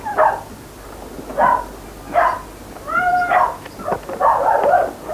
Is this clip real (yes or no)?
yes